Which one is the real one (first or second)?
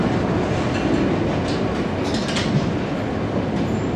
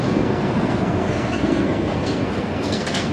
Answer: first